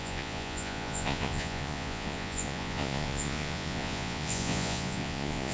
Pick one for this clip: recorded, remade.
remade